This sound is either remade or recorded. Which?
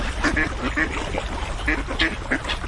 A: recorded